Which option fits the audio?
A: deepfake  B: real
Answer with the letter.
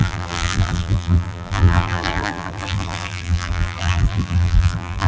A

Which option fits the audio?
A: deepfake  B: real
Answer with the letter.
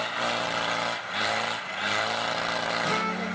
B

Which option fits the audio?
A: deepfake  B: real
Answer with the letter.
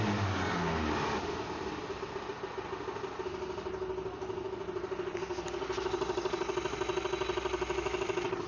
B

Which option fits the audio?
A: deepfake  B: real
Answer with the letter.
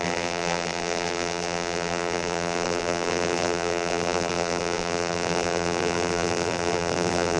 A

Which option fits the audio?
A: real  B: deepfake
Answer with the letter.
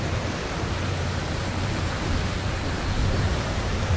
B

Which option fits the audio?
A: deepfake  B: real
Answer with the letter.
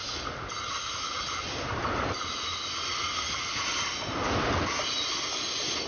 B